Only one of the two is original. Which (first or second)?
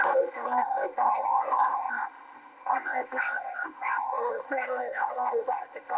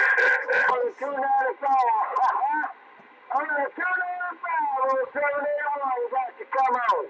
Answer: second